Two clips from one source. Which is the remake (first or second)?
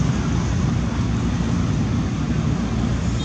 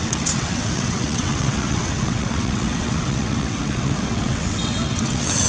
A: second